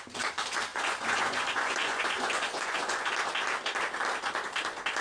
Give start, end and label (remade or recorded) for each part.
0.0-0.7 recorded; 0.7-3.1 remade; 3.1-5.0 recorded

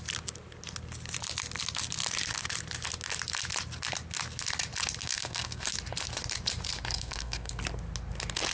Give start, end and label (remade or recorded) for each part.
0.0-5.0 recorded; 5.0-5.7 remade; 5.7-6.9 recorded; 6.9-7.6 remade; 7.6-8.5 recorded

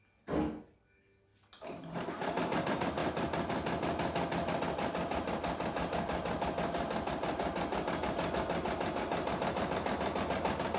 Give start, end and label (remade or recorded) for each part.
0.0-10.8 recorded

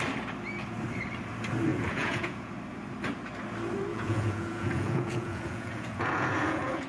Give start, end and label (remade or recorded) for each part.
0.0-1.7 recorded; 1.7-2.5 remade; 2.5-3.9 recorded; 3.9-6.9 remade

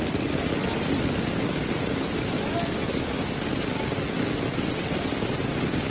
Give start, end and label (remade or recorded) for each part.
0.0-0.6 recorded; 0.6-4.1 remade; 4.1-5.9 recorded

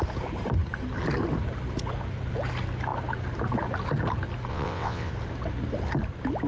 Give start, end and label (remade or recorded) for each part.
0.0-4.5 recorded; 4.5-5.1 remade; 5.1-6.5 recorded

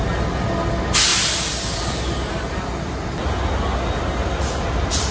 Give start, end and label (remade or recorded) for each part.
0.0-5.1 recorded